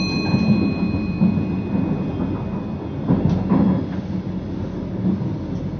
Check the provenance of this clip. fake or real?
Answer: real